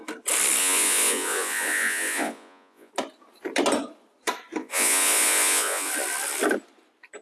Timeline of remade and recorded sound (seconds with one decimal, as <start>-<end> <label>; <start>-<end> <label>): 0.0-0.6 recorded; 0.6-2.9 remade; 2.9-4.6 recorded; 4.6-5.9 remade; 5.9-7.2 recorded